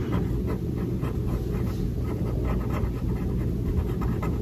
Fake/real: real